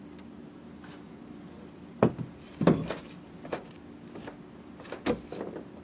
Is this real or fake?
real